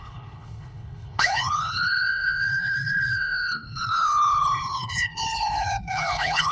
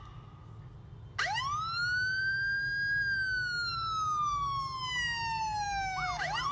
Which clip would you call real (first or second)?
second